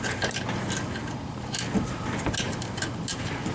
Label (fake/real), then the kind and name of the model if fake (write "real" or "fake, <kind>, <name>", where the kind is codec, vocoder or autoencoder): real